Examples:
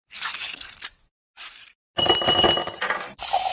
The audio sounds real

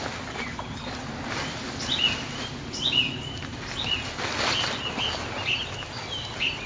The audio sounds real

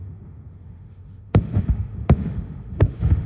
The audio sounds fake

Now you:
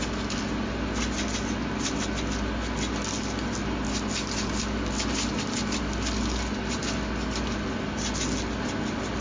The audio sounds real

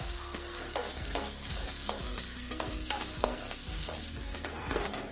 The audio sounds fake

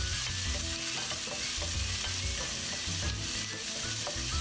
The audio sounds real